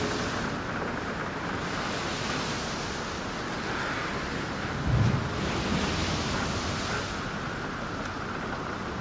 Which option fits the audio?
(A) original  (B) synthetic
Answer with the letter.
A